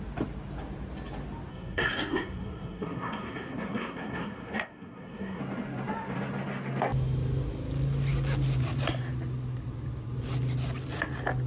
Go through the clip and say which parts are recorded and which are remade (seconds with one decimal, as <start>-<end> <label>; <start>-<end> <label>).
0.0-1.5 recorded; 1.5-5.4 remade; 5.4-11.5 recorded